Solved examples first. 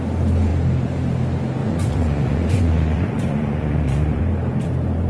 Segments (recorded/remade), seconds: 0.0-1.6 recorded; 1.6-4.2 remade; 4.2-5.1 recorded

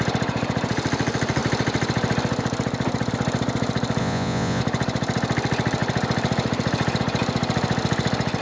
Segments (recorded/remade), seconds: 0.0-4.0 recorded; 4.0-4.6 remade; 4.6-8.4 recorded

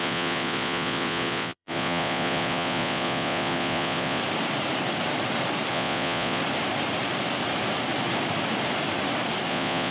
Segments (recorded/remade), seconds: 0.0-4.2 remade; 4.2-5.7 recorded; 5.7-6.4 remade; 6.4-9.5 recorded; 9.5-9.9 remade

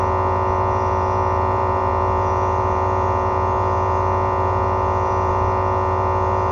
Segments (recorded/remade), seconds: 0.0-6.5 remade

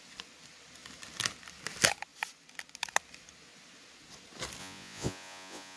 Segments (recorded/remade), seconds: 0.0-4.6 recorded; 4.6-5.8 remade

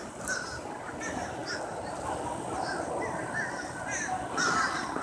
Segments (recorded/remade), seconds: 0.0-5.0 recorded